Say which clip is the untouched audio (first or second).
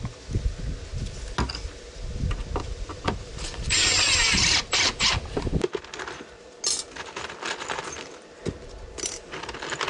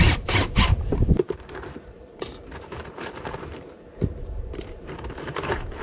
first